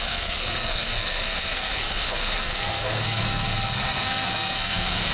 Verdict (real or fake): fake